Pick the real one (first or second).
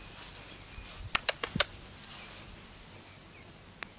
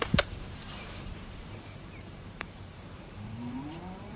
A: first